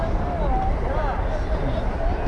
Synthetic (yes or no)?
no